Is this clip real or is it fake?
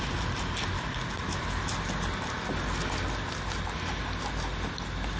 real